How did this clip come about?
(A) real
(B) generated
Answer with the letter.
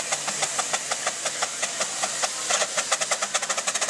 A